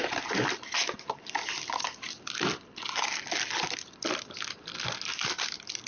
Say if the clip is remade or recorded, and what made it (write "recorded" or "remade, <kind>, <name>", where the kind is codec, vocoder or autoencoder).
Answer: recorded